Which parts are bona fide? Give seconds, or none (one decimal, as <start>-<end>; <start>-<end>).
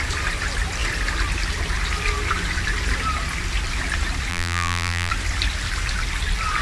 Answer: 0.0-4.3; 5.1-6.6